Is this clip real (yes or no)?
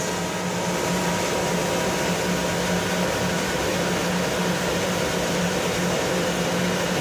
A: yes